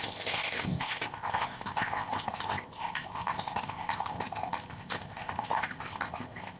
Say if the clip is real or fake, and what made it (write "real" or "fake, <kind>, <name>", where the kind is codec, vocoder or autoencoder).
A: fake, codec, ZipCodec